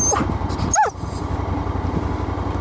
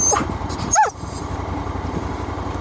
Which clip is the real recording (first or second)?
first